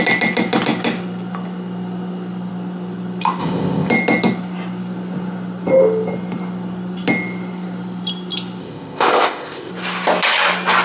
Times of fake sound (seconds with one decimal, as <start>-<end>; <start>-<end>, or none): 3.4-3.9; 8.6-9.7